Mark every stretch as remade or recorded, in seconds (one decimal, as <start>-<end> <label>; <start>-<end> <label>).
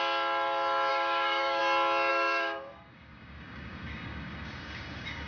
0.0-0.9 recorded; 0.9-1.6 remade; 1.6-2.1 recorded; 2.1-5.3 remade